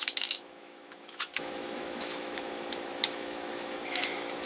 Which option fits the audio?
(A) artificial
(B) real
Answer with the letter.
A